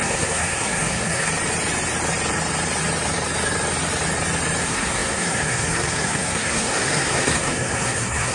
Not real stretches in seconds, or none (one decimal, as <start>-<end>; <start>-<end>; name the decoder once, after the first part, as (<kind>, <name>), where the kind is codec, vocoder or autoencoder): 0.0-1.3 (codec, SNAC); 4.6-8.3